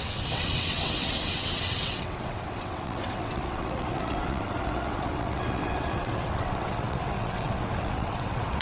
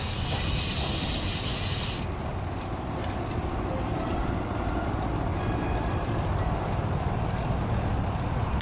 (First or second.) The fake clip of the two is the first